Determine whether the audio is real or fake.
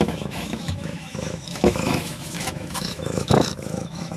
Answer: fake